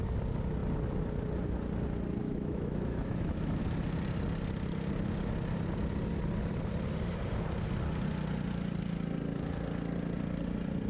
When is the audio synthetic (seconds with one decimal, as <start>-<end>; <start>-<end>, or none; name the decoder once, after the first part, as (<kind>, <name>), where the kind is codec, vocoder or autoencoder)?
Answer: 2.2-3.6 (autoencoder, DAC-VAE)